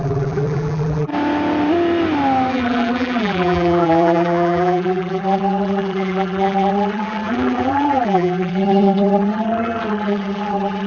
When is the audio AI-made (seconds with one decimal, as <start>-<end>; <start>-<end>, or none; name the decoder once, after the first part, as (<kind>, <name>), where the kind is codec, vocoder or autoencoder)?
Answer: 0.0-1.1 (vocoder, BigVGAN v2); 2.5-10.9